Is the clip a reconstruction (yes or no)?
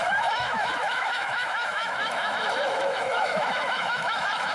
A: yes